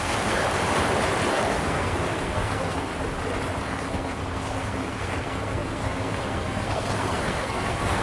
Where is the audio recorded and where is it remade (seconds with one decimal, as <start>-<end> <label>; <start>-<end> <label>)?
0.0-0.4 remade; 0.4-1.3 recorded; 1.3-2.9 remade; 2.9-3.6 recorded; 3.6-8.0 remade